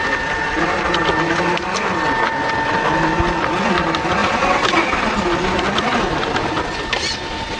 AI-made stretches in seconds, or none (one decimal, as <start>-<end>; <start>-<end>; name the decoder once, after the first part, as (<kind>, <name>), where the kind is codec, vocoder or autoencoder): none